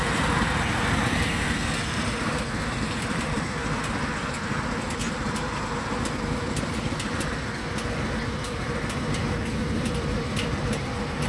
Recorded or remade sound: remade